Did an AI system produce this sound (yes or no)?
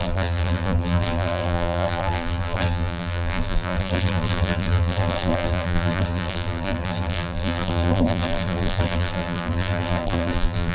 yes